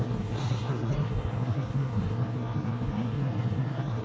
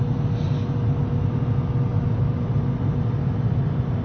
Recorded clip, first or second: second